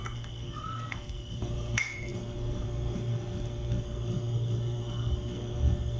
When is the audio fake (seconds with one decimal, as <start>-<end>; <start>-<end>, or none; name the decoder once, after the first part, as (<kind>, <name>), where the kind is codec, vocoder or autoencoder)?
0.0-6.0 (codec, SNAC)